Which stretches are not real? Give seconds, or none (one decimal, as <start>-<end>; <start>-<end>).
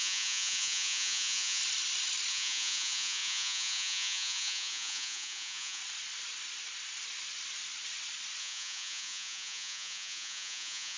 0.0-1.6; 2.3-5.8; 8.4-11.0